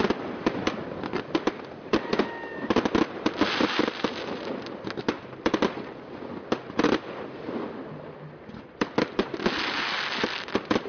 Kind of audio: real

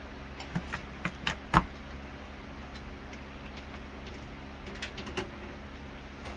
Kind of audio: real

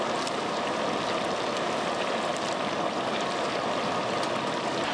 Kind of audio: real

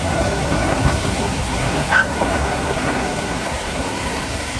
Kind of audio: fake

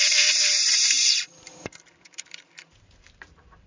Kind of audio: fake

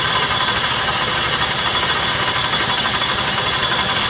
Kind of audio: real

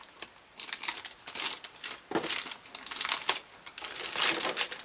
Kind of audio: real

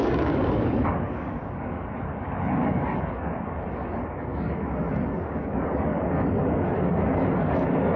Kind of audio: fake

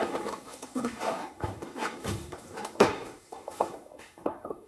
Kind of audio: fake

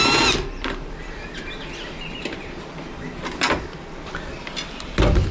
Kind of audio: real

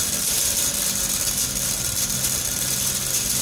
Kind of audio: real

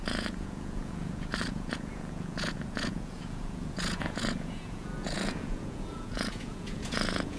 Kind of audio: fake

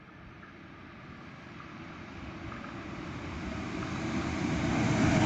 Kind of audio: real